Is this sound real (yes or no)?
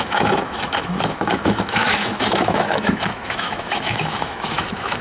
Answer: no